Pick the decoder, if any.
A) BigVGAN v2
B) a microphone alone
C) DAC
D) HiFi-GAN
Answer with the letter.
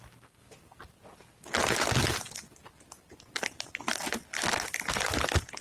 B